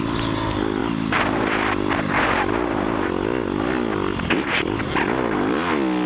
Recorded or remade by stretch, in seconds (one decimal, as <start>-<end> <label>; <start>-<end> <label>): 0.0-6.1 recorded